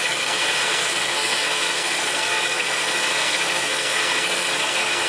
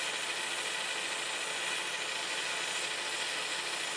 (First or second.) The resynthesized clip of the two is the first